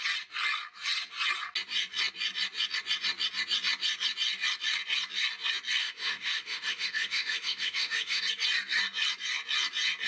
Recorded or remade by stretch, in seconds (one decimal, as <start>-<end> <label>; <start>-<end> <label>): 0.0-5.8 recorded; 5.8-8.2 remade; 8.2-10.1 recorded